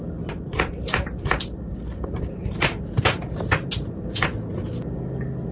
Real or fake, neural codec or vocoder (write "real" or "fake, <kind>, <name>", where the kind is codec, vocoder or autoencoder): real